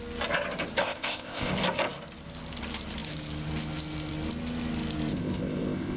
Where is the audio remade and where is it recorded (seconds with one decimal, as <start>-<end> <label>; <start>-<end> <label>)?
0.0-0.8 recorded; 0.8-1.5 remade; 1.5-5.1 recorded; 5.1-6.0 remade

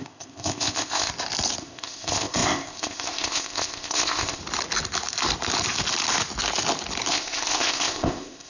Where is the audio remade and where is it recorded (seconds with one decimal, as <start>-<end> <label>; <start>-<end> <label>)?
0.0-1.1 remade; 1.1-1.6 recorded; 1.6-4.4 remade; 4.4-7.1 recorded; 7.1-8.5 remade

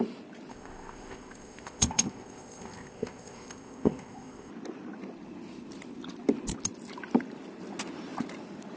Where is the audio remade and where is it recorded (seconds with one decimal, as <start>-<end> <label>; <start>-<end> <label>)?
0.0-0.5 recorded; 0.5-4.5 remade; 4.5-8.8 recorded